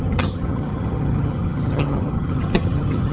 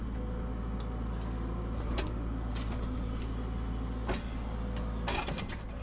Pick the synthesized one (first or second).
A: first